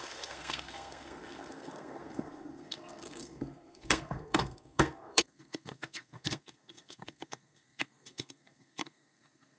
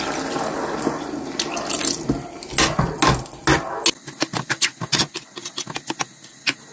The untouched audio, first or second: second